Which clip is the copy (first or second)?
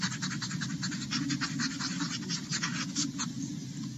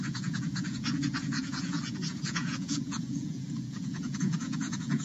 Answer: second